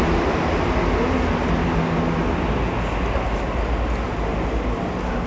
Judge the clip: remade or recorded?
recorded